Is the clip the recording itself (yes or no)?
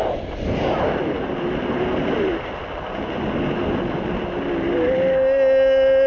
yes